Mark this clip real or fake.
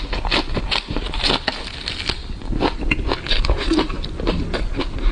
real